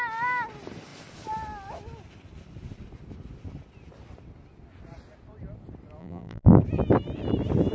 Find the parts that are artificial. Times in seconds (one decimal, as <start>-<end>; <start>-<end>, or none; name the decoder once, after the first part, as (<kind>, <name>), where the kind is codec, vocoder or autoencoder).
6.0-6.6 (vocoder, BigVGAN v2)